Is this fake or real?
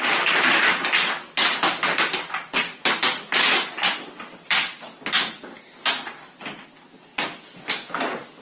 real